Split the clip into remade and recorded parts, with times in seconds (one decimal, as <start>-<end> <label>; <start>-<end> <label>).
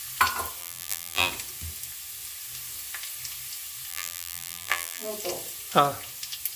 0.0-0.6 recorded; 0.6-1.3 remade; 1.3-3.9 recorded; 3.9-5.1 remade; 5.1-6.6 recorded